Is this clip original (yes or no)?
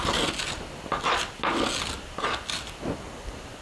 yes